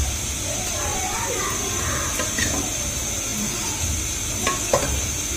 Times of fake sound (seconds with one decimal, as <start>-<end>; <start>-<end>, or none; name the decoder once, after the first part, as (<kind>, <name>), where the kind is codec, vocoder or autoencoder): 0.9-1.8 (vocoder, BigVGAN v2)